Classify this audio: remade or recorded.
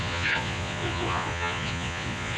remade